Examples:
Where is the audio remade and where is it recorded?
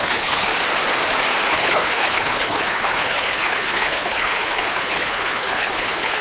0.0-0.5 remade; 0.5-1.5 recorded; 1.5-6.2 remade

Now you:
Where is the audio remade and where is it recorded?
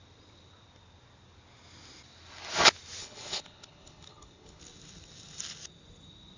0.0-3.0 recorded; 3.0-4.6 remade; 4.6-6.4 recorded